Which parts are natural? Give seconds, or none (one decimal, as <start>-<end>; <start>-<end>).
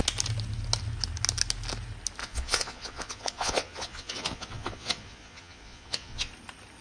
0.0-2.2; 6.3-6.8